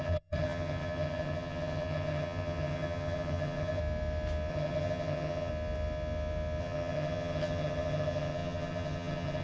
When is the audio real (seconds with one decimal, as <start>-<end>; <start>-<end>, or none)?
3.8-4.5; 5.5-6.6